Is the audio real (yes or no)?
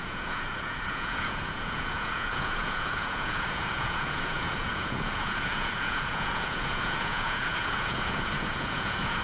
no